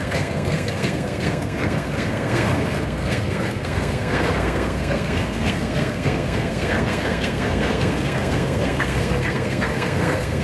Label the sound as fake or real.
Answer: fake